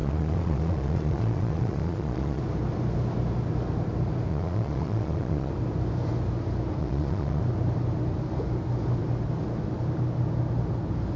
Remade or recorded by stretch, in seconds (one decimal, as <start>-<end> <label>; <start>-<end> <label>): 0.0-2.4 remade; 2.4-4.3 recorded; 4.3-5.5 remade; 5.5-6.8 recorded; 6.8-7.4 remade; 7.4-11.2 recorded

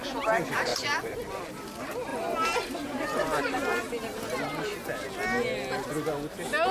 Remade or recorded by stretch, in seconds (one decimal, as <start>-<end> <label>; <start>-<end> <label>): 0.0-0.7 recorded; 0.7-1.4 remade; 1.4-2.1 recorded; 2.1-3.8 remade; 3.8-6.7 recorded

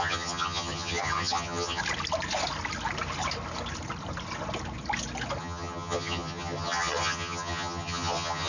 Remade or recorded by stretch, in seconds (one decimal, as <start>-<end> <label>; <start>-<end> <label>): 0.0-1.8 remade; 1.8-5.4 recorded; 5.4-8.5 remade

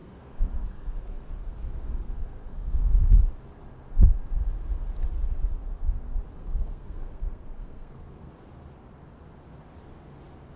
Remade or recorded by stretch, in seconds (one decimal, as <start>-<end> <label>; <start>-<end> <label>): 0.0-3.2 remade; 3.2-6.4 recorded; 6.4-8.3 remade; 8.3-10.6 recorded

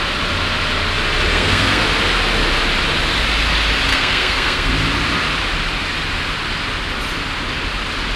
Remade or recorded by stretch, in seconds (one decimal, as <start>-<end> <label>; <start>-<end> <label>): 0.0-1.3 recorded; 1.3-1.8 remade; 1.8-3.9 recorded; 3.9-4.7 remade; 4.7-8.2 recorded

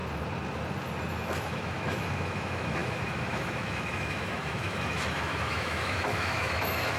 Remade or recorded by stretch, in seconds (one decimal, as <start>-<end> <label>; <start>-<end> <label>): 0.0-1.1 recorded; 1.1-7.0 remade

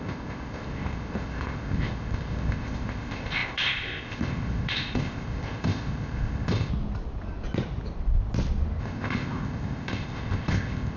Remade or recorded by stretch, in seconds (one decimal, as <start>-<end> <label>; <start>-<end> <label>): 0.0-6.7 remade; 6.7-8.8 recorded; 8.8-11.0 remade